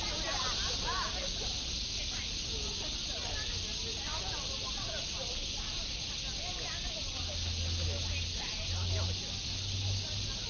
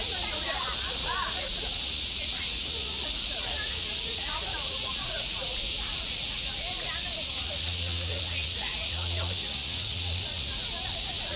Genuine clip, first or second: first